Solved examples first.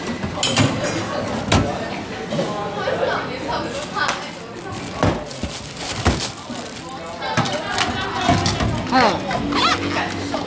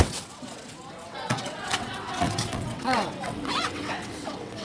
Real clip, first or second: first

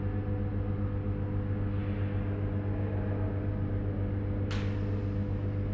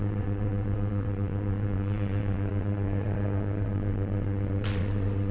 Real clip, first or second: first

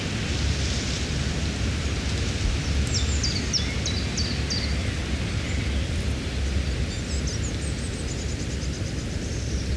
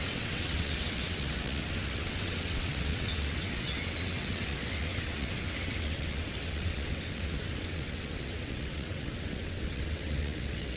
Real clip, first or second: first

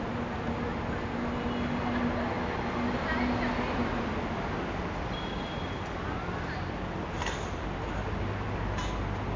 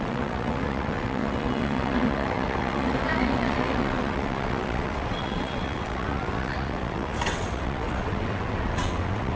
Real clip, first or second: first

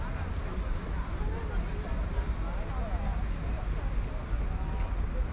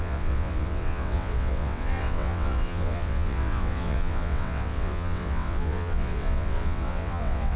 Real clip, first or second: first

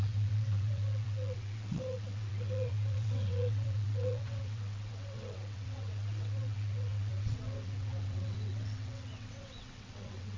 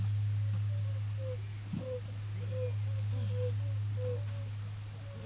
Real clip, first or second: second